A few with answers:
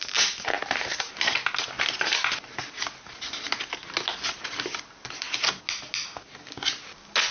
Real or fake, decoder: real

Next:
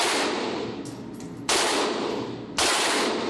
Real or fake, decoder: real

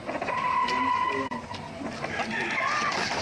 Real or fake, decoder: real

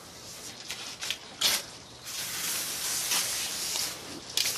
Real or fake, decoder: real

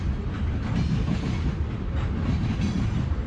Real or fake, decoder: real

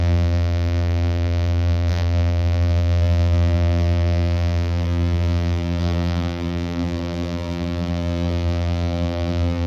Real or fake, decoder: fake, vocoder, BigVGAN v2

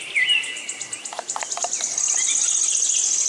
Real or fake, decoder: real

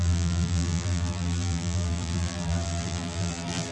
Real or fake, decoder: fake, vocoder, BigVGAN v2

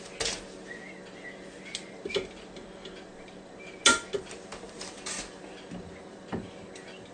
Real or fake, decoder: real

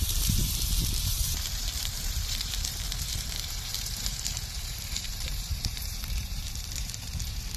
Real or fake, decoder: fake, vocoder, BigVGAN v2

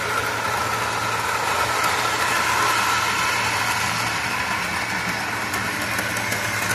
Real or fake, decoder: real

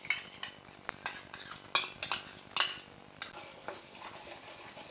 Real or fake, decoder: real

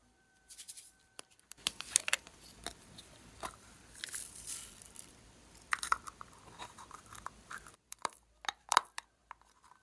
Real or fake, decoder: fake, vocoder, BigVGAN v2